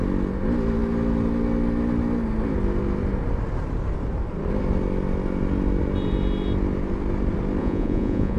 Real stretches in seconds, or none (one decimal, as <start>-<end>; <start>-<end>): 0.0-7.6